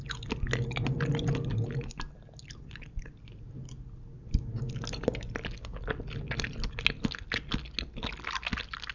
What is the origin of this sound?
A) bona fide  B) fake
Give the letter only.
A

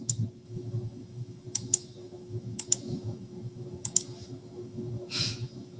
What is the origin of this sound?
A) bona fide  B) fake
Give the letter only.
B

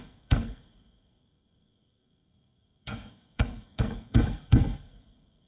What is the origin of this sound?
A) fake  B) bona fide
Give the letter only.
A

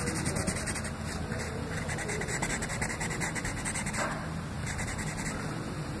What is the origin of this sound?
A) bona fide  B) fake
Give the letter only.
A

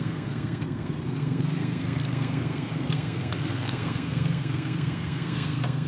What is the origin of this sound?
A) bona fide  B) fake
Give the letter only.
B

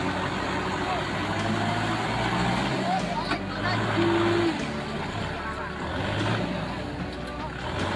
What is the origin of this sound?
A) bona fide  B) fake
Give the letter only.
A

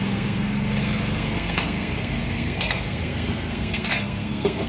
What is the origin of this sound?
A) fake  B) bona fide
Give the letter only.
A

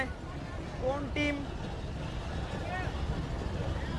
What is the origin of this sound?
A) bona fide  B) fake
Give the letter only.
A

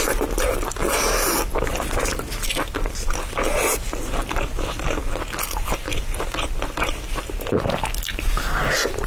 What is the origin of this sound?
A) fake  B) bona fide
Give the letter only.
B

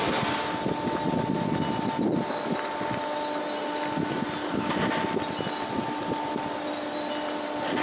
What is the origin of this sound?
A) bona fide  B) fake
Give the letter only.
A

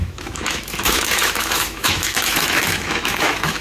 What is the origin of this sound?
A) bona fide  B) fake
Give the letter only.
B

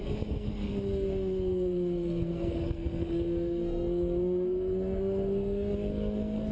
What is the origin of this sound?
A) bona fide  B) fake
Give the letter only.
B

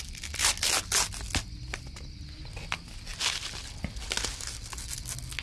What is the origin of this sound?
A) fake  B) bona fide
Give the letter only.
B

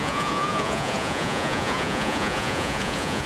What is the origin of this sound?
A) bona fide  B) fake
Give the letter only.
B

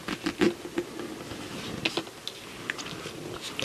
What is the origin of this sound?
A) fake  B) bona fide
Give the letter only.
B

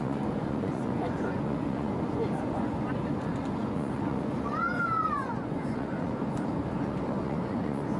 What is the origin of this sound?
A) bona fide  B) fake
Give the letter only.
B